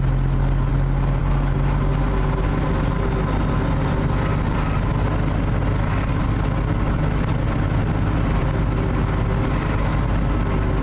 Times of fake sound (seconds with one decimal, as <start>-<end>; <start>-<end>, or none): none